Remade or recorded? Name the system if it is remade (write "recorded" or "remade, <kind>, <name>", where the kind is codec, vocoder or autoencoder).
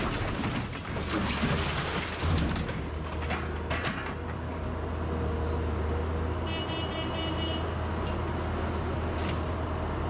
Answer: recorded